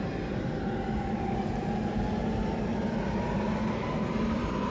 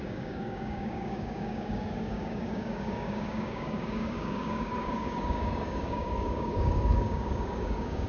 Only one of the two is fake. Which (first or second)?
second